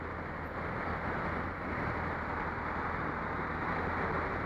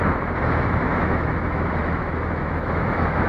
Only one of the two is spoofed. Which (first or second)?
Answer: second